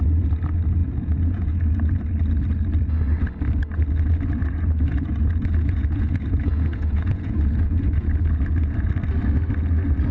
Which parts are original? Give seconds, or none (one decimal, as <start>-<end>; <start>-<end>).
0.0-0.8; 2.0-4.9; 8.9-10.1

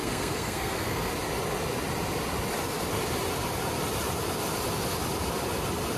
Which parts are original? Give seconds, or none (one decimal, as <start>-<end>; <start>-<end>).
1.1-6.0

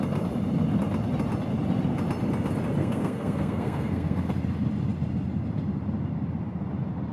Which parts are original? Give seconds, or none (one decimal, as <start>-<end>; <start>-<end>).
0.0-2.8; 4.3-7.1

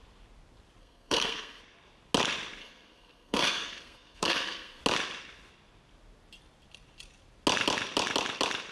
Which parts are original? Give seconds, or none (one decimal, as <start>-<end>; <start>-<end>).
0.0-0.8; 1.6-2.6; 4.8-8.7

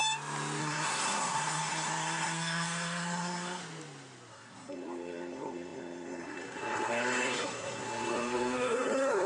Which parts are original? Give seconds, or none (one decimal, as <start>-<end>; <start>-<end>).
0.0-0.6; 3.6-4.3

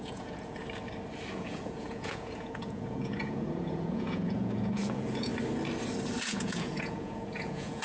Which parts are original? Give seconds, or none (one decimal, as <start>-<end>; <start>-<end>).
0.6-1.3; 5.3-6.2

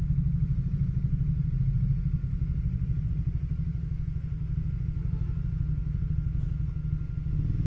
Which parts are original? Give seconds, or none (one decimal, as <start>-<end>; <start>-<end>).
0.0-7.7

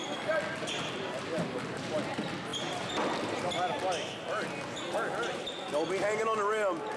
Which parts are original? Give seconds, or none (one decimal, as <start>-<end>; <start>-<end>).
0.0-7.0